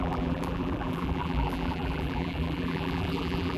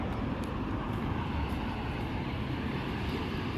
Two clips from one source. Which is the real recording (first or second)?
second